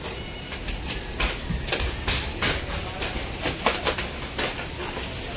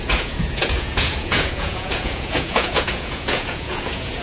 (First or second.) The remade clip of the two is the second